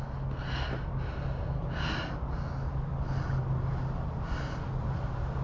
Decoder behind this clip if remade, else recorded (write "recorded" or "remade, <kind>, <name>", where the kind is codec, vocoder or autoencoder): recorded